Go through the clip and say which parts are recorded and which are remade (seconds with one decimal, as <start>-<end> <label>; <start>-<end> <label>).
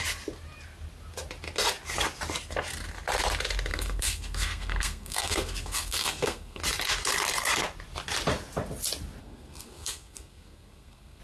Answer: 0.0-3.7 recorded; 3.7-6.6 remade; 6.6-9.2 recorded; 9.2-11.2 remade